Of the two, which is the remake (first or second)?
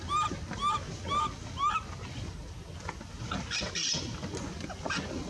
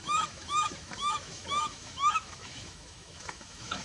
second